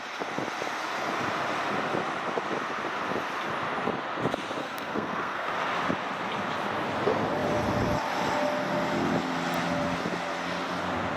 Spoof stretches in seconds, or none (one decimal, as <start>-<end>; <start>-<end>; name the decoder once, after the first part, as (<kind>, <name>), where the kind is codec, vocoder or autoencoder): 4.6-5.5 (codec, SNAC)